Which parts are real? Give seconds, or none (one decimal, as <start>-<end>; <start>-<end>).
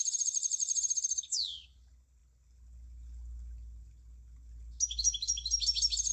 0.0-6.1